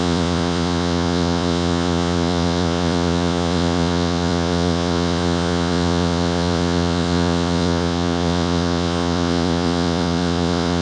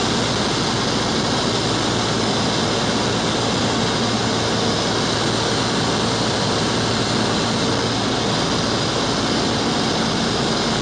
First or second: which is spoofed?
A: first